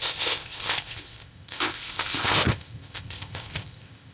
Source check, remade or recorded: remade